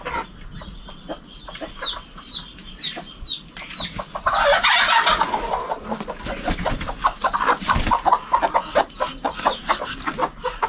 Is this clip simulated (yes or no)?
no